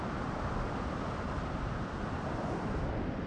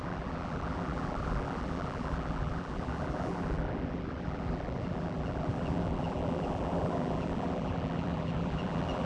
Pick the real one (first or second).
first